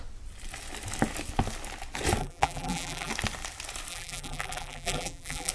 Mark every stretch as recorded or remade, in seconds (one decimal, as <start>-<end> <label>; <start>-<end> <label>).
0.0-2.2 recorded; 2.2-3.1 remade; 3.1-3.9 recorded; 3.9-5.5 remade